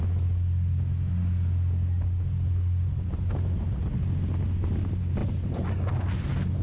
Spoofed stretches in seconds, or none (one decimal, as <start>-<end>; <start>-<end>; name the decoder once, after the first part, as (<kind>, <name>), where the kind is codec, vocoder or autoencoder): none